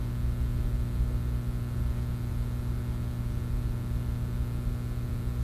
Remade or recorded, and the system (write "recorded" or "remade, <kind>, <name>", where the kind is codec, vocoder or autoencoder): recorded